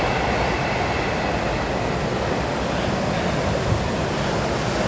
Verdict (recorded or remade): recorded